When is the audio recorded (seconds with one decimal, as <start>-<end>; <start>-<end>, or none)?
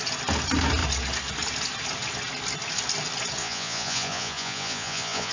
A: 0.0-3.4